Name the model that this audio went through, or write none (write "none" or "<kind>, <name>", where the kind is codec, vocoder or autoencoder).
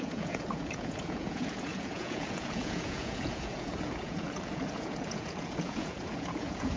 vocoder, Vocos